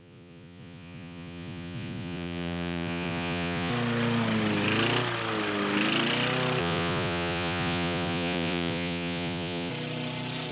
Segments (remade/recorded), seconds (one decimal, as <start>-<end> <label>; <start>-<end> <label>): 0.0-3.7 remade; 3.7-6.6 recorded; 6.6-9.7 remade; 9.7-10.5 recorded